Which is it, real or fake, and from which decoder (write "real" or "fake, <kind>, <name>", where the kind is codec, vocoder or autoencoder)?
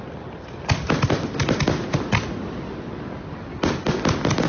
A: real